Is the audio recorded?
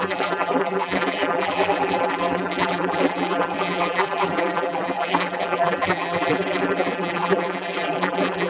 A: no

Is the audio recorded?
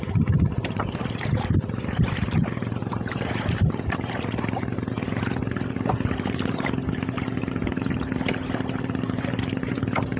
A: no